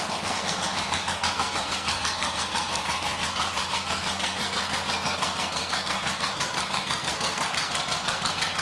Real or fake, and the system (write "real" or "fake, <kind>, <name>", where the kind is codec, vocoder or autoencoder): fake, codec, SNAC